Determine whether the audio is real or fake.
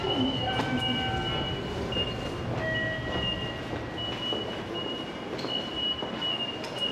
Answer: real